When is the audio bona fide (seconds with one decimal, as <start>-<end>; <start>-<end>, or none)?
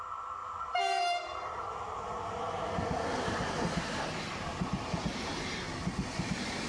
0.0-0.4; 1.4-4.5; 5.3-6.7